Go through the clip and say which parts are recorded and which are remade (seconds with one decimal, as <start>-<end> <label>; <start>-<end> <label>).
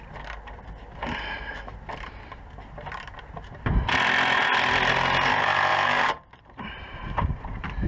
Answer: 0.0-5.7 recorded; 5.7-7.9 remade